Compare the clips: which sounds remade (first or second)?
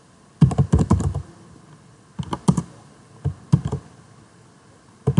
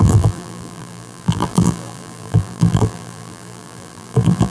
second